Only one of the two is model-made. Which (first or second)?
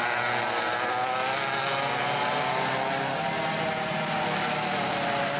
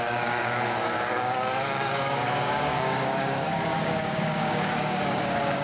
second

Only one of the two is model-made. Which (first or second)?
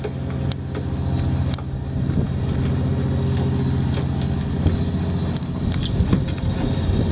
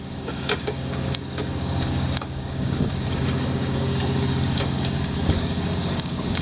second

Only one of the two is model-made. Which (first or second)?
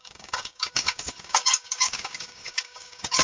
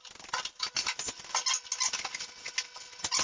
first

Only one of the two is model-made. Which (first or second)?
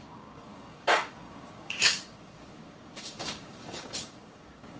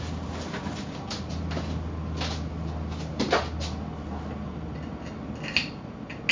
first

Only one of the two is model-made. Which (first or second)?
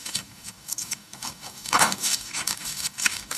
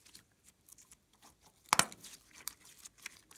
first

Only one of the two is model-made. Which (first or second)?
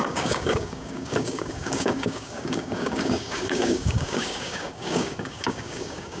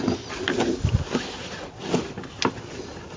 first